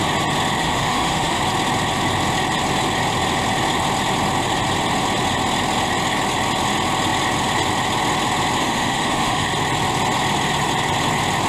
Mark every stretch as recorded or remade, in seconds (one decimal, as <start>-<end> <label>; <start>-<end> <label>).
0.0-0.6 recorded; 0.6-1.4 remade; 1.4-8.6 recorded; 8.6-9.5 remade; 9.5-11.5 recorded